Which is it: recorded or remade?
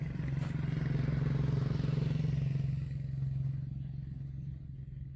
recorded